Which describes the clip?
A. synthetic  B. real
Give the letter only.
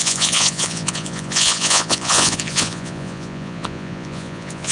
A